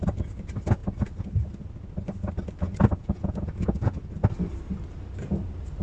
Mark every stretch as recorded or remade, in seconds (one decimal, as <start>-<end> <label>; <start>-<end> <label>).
0.0-3.0 recorded; 3.0-4.1 remade; 4.1-5.8 recorded